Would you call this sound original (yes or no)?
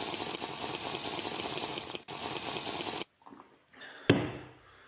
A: yes